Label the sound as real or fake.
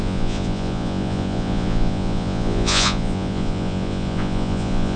fake